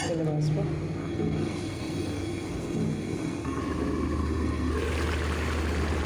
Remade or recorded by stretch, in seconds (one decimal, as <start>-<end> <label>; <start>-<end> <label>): 0.0-1.0 recorded; 1.0-3.6 remade; 3.6-4.2 recorded; 4.2-4.7 remade; 4.7-6.1 recorded